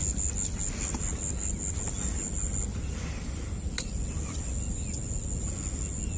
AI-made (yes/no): no